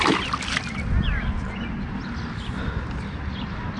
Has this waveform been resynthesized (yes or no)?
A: no